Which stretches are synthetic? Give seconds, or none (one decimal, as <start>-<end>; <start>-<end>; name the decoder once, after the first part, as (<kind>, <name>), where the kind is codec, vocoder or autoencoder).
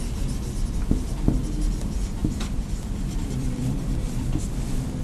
2.2-5.0 (vocoder, BigVGAN v2)